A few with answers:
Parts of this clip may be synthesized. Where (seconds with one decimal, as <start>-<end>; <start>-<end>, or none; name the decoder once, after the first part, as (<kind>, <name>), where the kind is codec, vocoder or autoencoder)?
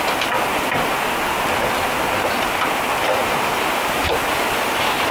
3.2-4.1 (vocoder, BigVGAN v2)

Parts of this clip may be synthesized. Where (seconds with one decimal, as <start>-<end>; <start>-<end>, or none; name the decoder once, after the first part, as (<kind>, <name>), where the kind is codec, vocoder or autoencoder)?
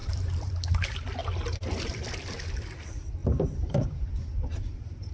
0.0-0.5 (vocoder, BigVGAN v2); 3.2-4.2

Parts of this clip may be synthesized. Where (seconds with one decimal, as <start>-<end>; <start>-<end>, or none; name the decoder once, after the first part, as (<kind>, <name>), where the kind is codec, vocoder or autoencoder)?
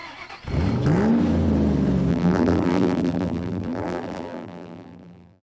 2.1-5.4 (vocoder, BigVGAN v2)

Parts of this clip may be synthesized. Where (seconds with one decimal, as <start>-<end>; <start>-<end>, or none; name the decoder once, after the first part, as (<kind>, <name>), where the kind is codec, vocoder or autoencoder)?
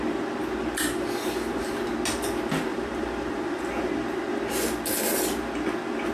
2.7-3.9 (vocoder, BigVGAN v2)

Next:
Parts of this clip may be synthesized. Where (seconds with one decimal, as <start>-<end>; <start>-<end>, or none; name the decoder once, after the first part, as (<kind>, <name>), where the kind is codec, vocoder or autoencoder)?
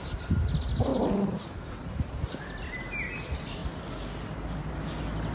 0.9-2.8 (vocoder, BigVGAN v2)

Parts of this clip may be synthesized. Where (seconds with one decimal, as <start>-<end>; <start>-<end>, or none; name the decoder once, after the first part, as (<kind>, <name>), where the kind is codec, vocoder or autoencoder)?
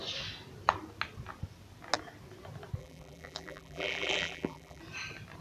2.8-4.8 (vocoder, BigVGAN v2)